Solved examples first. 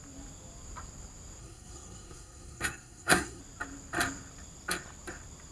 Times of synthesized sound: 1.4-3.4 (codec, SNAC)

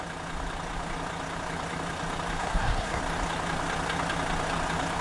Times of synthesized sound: 2.4-3.0 (codec, SNAC)

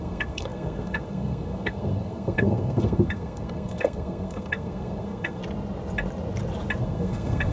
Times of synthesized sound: 0.0-5.4 (codec, SNAC); 6.8-7.5

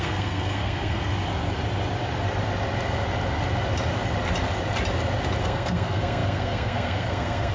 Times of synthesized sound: 0.0-1.0 (codec, SNAC); 5.4-7.5

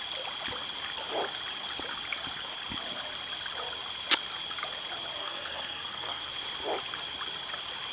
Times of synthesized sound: 5.2-6.2 (codec, SNAC)

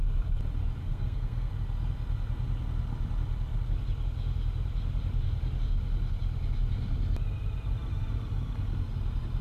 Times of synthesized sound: 0.8-1.5 (codec, SNAC)

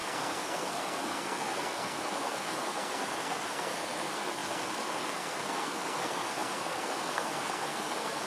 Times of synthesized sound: 0.0-8.3 (codec, SNAC)